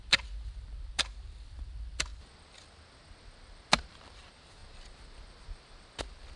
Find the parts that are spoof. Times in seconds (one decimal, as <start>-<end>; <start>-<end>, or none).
0.0-2.1; 3.8-4.6; 6.0-6.4